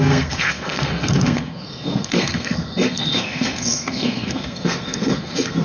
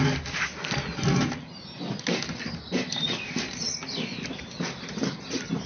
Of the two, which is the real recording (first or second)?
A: second